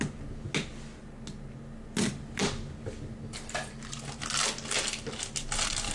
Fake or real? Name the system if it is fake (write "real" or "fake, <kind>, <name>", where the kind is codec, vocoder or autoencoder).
real